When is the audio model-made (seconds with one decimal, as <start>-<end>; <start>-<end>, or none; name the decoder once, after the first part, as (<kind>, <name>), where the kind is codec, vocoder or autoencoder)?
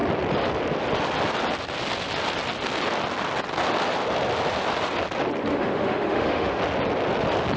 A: 5.5-6.6 (autoencoder, DAC-VAE)